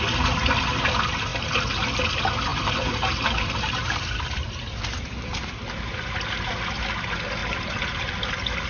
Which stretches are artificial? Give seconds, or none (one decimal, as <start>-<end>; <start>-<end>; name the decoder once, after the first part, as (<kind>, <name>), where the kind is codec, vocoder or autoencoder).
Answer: 2.5-5.5 (vocoder, BigVGAN v2); 7.4-8.1

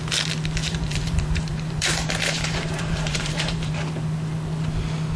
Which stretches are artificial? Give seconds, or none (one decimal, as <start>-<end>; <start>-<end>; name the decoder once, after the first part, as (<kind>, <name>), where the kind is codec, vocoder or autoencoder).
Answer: 0.6-3.7 (vocoder, BigVGAN v2)

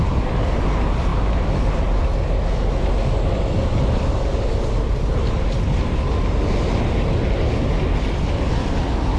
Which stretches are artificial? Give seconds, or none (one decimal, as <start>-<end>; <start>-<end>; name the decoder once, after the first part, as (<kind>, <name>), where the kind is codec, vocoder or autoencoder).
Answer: none